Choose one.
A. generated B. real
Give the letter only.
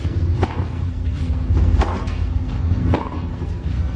A